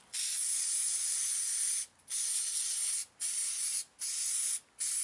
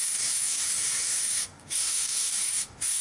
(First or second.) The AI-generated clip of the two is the second